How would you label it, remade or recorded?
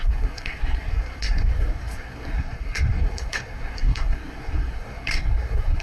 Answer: remade